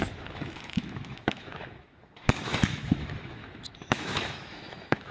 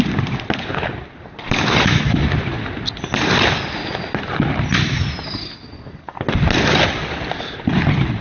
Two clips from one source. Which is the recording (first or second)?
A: second